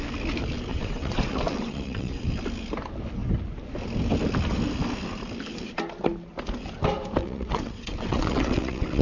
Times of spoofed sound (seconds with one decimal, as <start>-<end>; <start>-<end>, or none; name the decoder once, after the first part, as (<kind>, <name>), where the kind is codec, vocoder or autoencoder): 0.7-2.2 (vocoder, WaveNeXt); 7.2-9.0